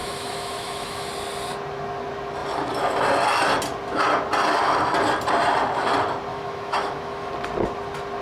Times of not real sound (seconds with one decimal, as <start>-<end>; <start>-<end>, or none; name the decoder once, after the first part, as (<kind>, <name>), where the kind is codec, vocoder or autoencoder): 0.0-1.1 (autoencoder, DAC-VAE); 6.3-7.3